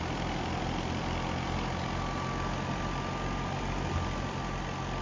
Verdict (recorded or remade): recorded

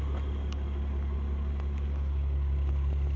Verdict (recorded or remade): recorded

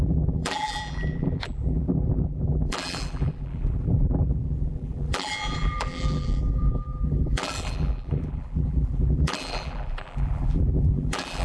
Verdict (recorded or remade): remade